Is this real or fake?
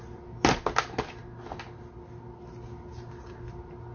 real